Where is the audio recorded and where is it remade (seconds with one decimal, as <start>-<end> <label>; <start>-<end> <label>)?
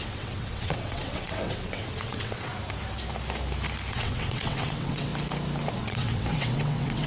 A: 0.0-2.5 remade; 2.5-3.9 recorded; 3.9-5.1 remade; 5.1-5.7 recorded; 5.7-7.1 remade